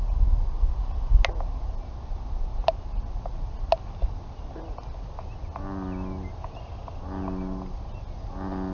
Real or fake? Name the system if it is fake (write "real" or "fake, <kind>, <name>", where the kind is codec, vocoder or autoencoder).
real